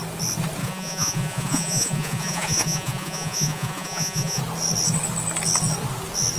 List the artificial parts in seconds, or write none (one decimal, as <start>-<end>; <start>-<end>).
0.6-4.4